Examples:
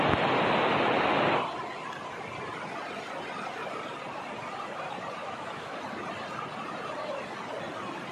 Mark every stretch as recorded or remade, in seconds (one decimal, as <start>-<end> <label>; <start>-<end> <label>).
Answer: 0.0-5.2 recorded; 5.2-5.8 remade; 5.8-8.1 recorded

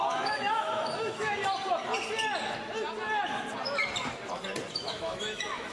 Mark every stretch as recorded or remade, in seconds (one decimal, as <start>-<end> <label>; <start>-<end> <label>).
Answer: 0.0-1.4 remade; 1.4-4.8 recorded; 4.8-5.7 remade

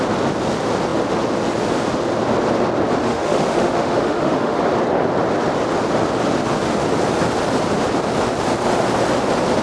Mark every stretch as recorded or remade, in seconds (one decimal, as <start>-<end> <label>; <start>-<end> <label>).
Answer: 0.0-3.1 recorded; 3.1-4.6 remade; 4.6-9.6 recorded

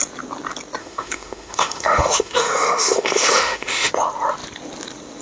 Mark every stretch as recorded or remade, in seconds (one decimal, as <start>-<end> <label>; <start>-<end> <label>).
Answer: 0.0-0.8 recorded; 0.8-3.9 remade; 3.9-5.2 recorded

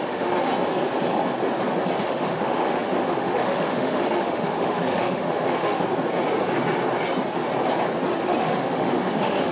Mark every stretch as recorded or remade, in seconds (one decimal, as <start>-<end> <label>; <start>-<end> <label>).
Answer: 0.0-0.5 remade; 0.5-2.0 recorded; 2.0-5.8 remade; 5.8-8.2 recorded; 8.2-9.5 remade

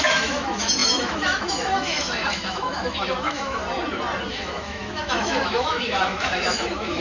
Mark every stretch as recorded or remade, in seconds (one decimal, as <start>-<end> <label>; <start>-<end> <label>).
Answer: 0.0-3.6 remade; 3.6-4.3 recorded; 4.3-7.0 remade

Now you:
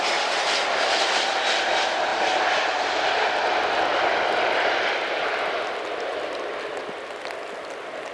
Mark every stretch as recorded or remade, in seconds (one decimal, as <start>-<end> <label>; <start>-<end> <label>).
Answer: 0.0-8.1 recorded